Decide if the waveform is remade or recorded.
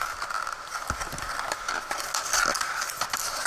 recorded